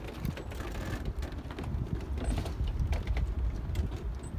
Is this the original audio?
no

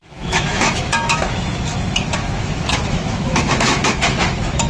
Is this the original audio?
no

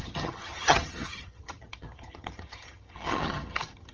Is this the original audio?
no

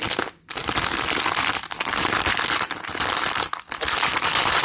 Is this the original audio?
yes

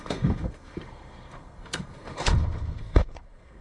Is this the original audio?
no